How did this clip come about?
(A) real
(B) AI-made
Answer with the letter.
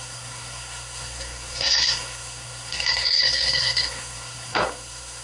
B